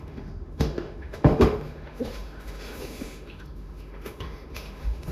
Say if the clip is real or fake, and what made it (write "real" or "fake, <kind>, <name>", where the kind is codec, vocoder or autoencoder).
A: fake, autoencoder, DAC-VAE